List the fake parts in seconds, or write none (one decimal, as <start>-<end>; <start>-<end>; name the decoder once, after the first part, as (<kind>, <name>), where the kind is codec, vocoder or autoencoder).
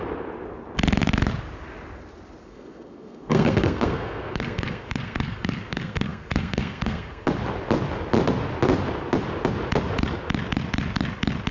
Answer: 2.4-7.3 (codec, SNAC)